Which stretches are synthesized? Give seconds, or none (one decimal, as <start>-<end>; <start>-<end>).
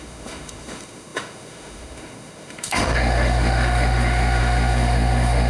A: 0.0-5.5